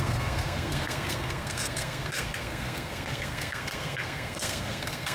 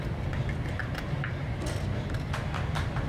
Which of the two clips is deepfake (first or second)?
first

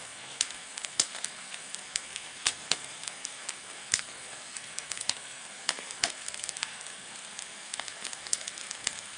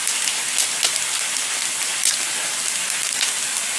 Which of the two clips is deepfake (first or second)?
first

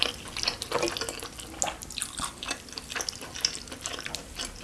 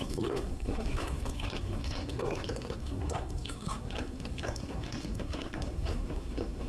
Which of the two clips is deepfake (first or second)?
second